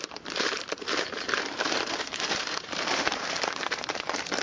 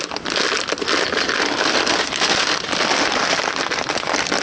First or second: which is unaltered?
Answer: second